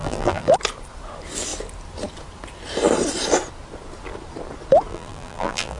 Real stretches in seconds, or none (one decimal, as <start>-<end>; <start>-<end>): 0.5-4.9